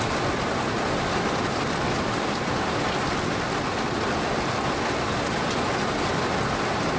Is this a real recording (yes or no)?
yes